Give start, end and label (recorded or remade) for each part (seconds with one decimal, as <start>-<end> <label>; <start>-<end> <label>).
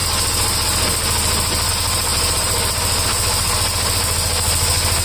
0.0-5.0 recorded